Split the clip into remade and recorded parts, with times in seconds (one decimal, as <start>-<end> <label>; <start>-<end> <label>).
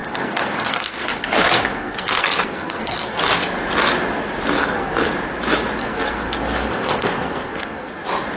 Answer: 0.0-3.2 remade; 3.2-4.6 recorded; 4.6-5.1 remade; 5.1-5.8 recorded; 5.8-7.9 remade; 7.9-8.4 recorded